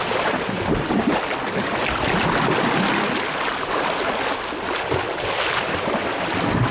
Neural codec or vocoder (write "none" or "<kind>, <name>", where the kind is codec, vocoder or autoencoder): none